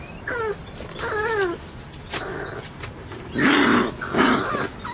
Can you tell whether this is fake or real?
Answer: real